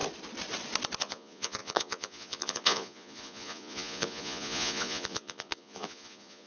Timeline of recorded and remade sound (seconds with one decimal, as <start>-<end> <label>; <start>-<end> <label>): 0.0-1.0 recorded; 1.0-6.5 remade